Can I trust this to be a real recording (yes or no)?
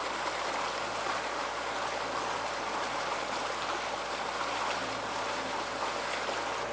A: yes